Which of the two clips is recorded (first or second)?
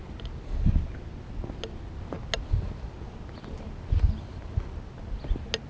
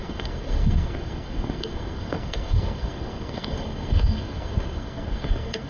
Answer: first